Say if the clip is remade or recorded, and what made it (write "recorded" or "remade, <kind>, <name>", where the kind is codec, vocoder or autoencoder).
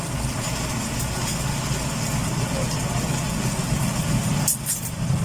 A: recorded